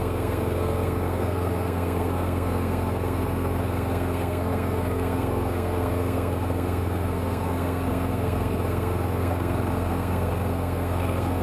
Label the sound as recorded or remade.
remade